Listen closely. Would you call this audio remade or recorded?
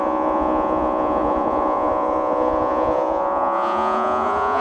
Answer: remade